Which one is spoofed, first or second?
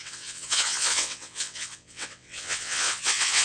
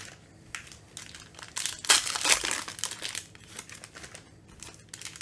first